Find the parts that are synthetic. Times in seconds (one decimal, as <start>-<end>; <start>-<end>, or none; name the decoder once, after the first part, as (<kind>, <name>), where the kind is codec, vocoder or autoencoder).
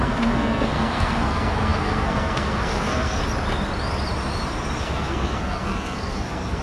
0.0-3.2 (codec, SNAC); 4.8-6.6